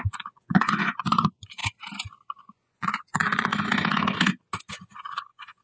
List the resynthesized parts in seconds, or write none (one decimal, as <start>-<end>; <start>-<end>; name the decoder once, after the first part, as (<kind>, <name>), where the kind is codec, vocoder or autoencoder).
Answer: 0.0-1.6 (vocoder, Vocos); 2.4-3.5; 4.7-5.6